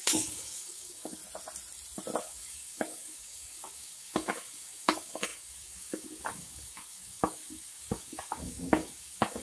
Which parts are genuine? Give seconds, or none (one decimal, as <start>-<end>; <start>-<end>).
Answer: 1.2-2.2